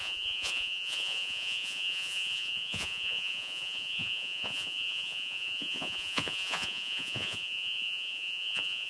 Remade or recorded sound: remade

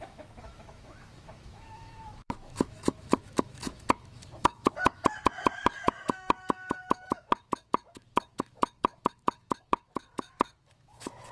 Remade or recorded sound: remade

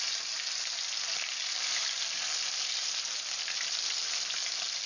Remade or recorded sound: recorded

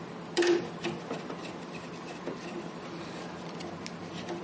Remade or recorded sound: recorded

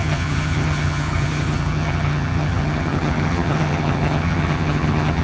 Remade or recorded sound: remade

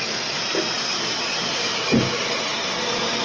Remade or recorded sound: recorded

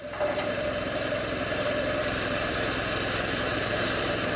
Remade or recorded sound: remade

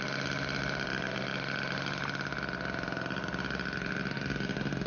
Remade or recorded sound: recorded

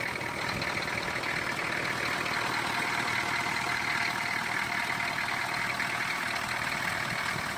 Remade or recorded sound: recorded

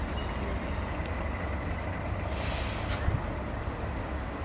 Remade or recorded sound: recorded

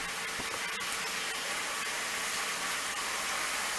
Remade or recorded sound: recorded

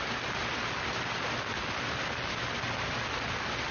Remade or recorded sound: recorded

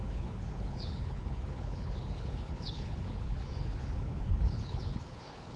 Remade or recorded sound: remade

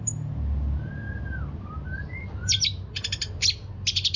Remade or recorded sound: recorded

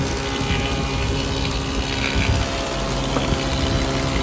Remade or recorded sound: recorded